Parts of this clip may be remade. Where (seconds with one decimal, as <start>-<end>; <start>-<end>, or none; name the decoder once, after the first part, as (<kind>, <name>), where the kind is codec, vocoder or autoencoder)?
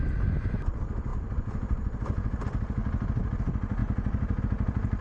0.0-2.8 (vocoder, BigVGAN v2); 3.4-5.0